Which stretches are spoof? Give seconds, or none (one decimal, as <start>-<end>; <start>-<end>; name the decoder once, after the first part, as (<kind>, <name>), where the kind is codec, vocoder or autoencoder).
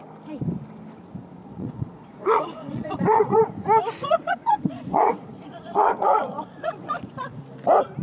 1.4-3.4 (vocoder, Vocos); 4.0-7.4